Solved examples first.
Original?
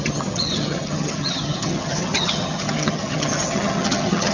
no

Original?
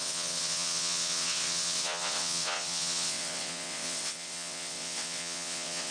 no